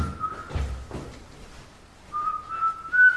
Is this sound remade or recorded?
recorded